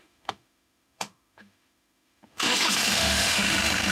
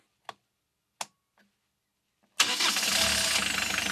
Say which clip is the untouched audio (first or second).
second